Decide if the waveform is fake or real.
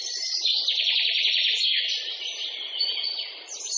fake